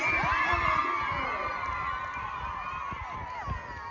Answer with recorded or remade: recorded